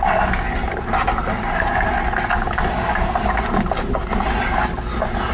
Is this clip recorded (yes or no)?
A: yes